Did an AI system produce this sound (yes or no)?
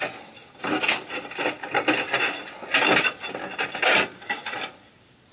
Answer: no